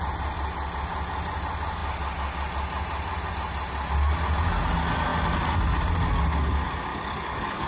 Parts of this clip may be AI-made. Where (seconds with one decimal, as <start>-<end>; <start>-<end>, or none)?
6.9-7.7